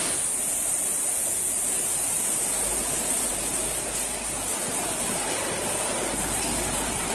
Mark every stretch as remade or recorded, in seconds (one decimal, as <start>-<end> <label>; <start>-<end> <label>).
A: 0.0-1.1 remade; 1.1-7.1 recorded